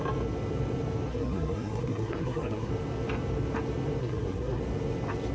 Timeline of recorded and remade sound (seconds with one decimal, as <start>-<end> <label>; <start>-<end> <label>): 0.0-1.1 recorded; 1.1-2.7 remade; 2.7-4.0 recorded; 4.0-4.6 remade; 4.6-5.3 recorded